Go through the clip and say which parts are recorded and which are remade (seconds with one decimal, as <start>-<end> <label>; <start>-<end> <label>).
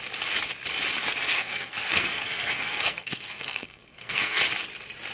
0.0-1.3 recorded; 1.3-4.4 remade; 4.4-5.1 recorded